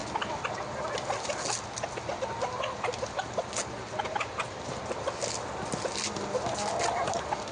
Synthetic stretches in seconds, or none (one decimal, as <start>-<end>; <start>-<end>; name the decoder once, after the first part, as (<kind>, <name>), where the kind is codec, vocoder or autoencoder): none